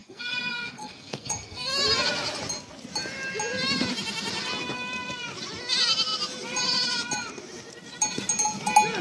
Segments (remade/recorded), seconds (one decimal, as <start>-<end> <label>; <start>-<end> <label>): 0.0-1.7 remade; 1.7-9.0 recorded